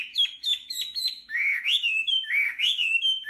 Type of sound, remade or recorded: remade